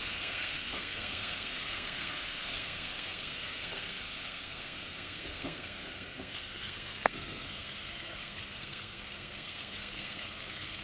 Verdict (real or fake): fake